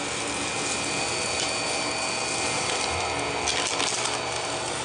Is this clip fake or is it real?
real